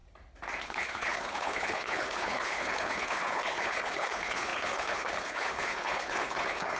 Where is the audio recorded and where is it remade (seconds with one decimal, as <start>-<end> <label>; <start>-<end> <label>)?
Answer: 0.0-0.6 recorded; 0.6-6.8 remade